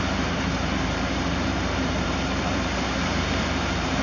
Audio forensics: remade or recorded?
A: remade